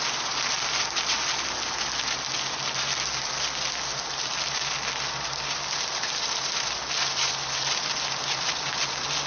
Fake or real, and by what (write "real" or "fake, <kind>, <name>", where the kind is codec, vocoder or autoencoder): real